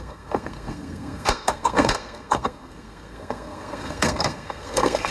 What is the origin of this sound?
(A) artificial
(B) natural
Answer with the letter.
A